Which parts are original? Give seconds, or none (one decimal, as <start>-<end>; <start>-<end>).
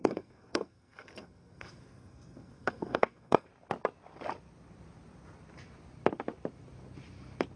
3.5-7.6